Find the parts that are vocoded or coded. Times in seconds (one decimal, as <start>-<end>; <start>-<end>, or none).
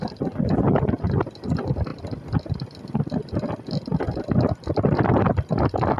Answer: 0.0-6.0